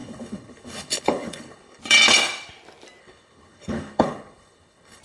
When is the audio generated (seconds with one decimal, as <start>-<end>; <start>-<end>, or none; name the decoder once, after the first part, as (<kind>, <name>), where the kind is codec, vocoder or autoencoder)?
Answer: 0.0-1.8 (codec, HILCodec); 3.0-5.0